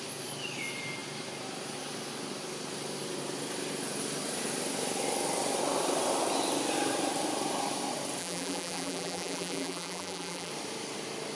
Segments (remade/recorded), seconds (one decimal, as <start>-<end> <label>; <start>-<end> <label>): 0.0-8.2 recorded; 8.2-10.5 remade; 10.5-11.4 recorded